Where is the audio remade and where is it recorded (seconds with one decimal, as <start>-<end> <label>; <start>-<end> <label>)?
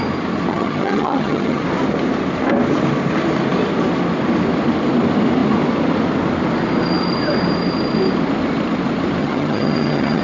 0.0-0.5 recorded; 0.5-1.6 remade; 1.6-9.2 recorded; 9.2-10.2 remade